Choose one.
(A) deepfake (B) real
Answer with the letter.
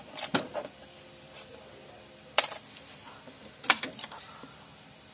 A